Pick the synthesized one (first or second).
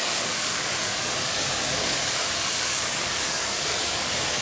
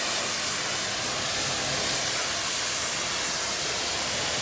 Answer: first